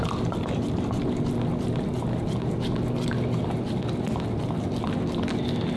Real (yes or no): yes